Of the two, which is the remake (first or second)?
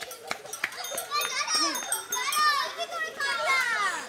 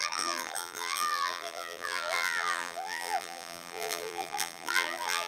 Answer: second